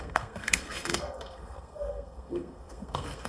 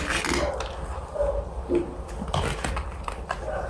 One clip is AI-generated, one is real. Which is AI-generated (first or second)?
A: first